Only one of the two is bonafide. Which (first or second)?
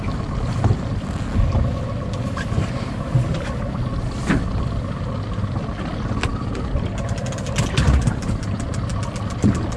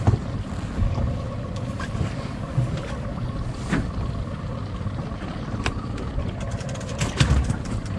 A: first